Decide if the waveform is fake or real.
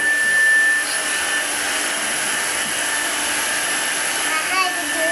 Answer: real